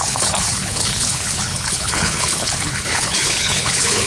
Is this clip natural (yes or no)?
no